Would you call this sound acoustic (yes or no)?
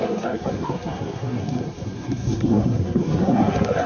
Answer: no